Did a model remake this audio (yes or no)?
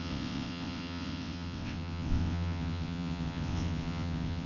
yes